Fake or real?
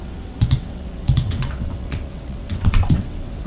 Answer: fake